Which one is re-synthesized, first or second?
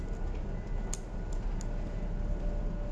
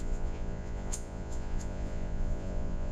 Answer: second